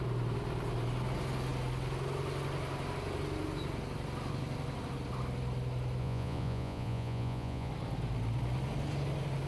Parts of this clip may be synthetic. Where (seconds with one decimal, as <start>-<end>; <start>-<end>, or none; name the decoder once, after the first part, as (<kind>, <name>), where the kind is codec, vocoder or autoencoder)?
6.0-7.7 (vocoder, Vocos)